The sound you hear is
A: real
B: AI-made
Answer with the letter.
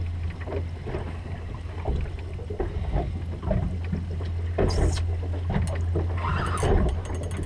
A